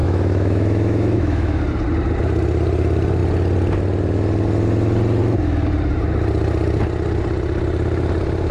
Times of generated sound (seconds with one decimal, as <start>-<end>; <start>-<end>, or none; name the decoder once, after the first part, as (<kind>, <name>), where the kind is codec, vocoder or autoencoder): 0.0-1.6 (autoencoder, DAC-VAE)

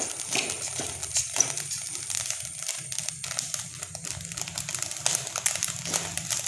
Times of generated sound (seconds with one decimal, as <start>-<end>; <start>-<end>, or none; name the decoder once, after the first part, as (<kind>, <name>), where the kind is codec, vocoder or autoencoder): none

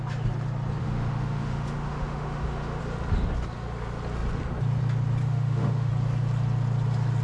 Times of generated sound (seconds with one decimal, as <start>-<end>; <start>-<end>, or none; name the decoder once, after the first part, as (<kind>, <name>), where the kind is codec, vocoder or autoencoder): 0.8-2.8 (autoencoder, DAC-VAE); 5.2-5.9

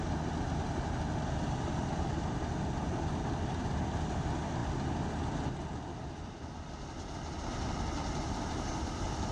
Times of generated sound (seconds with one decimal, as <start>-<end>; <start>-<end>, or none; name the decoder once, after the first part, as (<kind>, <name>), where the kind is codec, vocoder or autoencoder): none

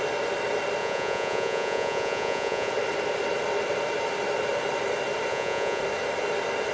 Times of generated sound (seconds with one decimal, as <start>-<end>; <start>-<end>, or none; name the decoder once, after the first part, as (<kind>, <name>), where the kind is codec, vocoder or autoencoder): 0.8-2.7 (vocoder, Vocos); 5.3-5.8

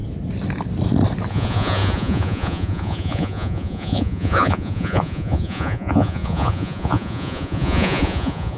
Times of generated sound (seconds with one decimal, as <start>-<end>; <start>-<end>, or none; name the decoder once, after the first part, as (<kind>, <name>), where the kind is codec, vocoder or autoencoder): 1.3-8.6 (vocoder, Vocos)

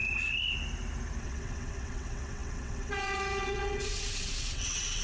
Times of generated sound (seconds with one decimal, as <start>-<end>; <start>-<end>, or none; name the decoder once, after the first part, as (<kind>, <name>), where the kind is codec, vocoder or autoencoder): 1.2-5.0 (vocoder, WaveNeXt)

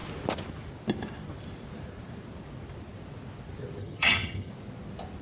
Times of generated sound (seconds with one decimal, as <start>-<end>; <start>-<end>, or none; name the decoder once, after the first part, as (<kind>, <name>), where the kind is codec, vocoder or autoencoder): 3.8-4.5 (vocoder, HiFi-GAN)